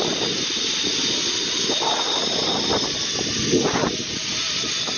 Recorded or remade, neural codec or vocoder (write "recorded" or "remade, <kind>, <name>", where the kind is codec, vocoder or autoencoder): recorded